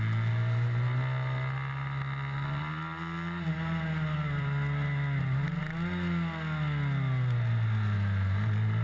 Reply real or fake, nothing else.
real